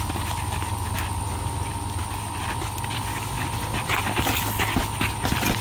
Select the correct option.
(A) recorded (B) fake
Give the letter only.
A